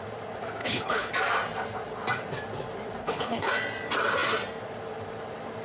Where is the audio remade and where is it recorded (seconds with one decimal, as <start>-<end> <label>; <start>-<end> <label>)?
0.0-0.6 recorded; 0.6-1.1 remade; 1.1-3.0 recorded; 3.0-3.5 remade; 3.5-5.6 recorded